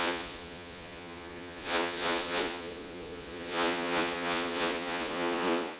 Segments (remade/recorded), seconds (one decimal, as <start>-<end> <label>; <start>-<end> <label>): 0.0-5.8 remade